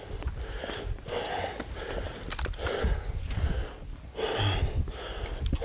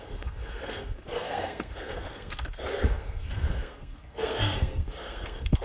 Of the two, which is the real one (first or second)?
first